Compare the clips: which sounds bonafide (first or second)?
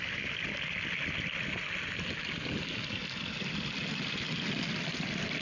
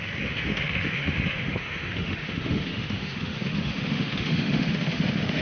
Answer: first